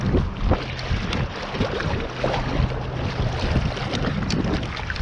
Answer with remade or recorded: recorded